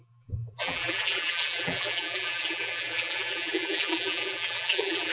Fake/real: fake